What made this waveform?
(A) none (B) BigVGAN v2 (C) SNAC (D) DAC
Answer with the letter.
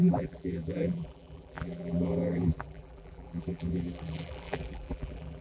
B